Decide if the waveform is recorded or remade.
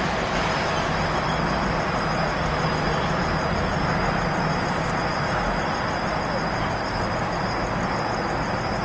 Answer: recorded